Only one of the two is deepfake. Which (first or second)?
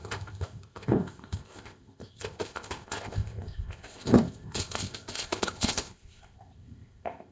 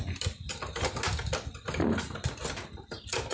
first